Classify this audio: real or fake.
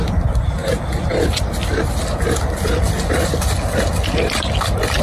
real